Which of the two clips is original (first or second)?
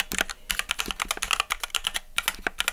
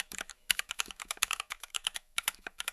first